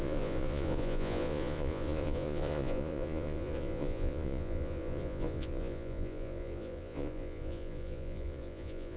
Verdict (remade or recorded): remade